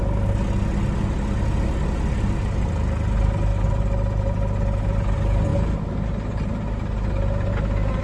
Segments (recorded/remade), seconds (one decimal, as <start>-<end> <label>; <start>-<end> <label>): 0.0-8.0 recorded